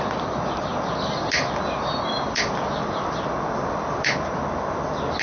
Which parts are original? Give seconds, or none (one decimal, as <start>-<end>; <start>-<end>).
0.0-5.2